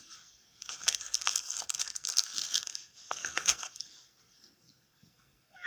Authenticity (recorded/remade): remade